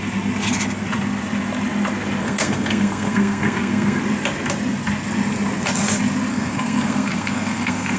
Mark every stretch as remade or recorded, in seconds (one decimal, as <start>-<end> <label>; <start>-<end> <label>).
0.0-2.2 recorded; 2.2-4.0 remade; 4.0-6.3 recorded; 6.3-8.0 remade